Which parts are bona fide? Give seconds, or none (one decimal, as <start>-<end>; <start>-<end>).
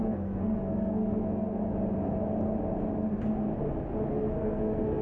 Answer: 1.6-4.1